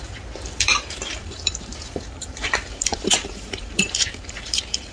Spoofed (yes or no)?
yes